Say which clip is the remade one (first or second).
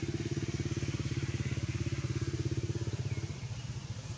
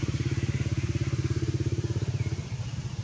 second